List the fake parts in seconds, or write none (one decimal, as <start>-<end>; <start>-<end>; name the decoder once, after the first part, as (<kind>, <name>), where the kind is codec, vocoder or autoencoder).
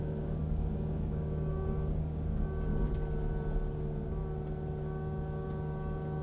0.0-2.7 (codec, DAC); 3.7-4.2; 4.8-6.2